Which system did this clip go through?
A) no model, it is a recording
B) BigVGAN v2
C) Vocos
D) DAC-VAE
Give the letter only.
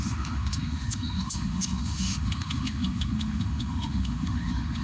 D